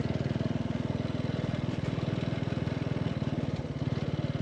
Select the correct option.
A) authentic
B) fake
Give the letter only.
A